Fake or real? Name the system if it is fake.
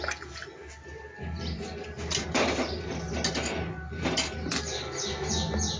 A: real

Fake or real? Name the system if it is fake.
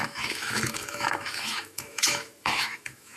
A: fake, autoencoder, DAC-VAE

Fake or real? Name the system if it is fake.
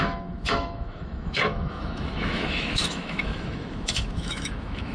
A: fake, autoencoder, DAC-VAE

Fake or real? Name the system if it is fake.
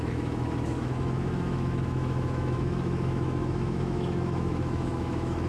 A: fake, autoencoder, DAC-VAE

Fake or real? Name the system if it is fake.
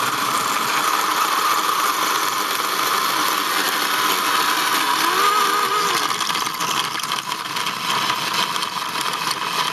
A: real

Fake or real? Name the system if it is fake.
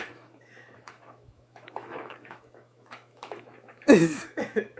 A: fake, autoencoder, DAC-VAE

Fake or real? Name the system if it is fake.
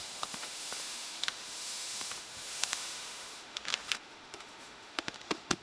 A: fake, autoencoder, DAC-VAE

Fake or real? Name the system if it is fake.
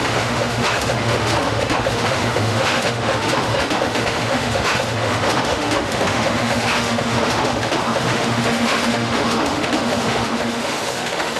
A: fake, autoencoder, DAC-VAE